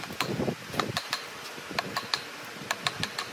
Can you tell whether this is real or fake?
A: real